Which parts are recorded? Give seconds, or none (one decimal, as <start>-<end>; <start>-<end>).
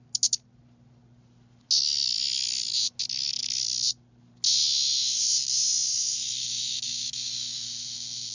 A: 0.0-5.9